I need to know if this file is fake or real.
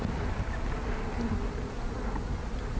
real